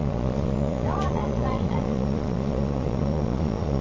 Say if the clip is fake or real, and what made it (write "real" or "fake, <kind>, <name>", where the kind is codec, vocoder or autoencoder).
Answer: fake, vocoder, Vocos